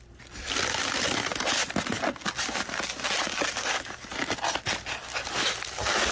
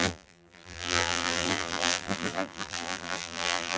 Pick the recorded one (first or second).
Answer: first